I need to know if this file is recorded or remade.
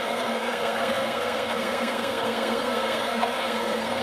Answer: remade